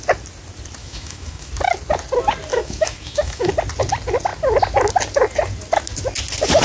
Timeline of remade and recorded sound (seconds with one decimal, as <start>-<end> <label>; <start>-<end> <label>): 0.0-0.8 recorded; 0.8-1.5 remade; 1.5-2.5 recorded; 2.5-3.5 remade; 3.5-6.6 recorded

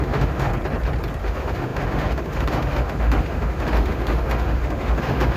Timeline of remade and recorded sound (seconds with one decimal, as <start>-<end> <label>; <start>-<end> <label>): 0.0-0.5 remade; 0.5-1.2 recorded; 1.2-5.4 remade

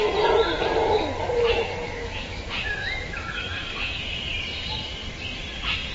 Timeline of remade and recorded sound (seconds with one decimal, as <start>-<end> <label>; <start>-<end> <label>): 0.0-2.0 recorded; 2.0-4.0 remade; 4.0-5.9 recorded

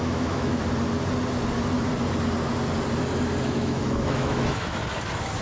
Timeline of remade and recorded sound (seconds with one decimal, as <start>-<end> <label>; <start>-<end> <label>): 0.0-0.6 remade; 0.6-3.4 recorded; 3.4-4.8 remade; 4.8-5.4 recorded